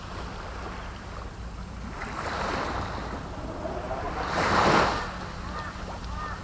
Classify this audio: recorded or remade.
recorded